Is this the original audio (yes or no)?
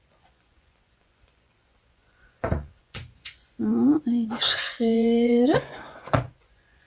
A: no